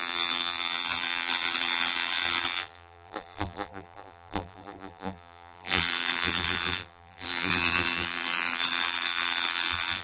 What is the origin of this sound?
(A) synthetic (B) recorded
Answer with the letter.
A